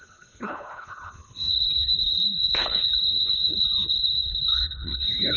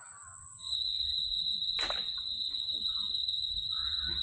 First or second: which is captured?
second